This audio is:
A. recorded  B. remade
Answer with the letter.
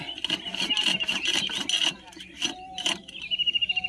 A